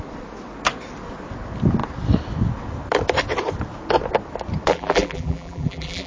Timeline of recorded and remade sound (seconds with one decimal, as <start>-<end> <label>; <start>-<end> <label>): 0.0-4.7 recorded; 4.7-6.1 remade